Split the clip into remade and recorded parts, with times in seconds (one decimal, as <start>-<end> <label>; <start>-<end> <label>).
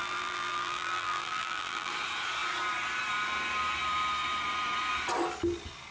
0.0-1.9 remade; 1.9-5.9 recorded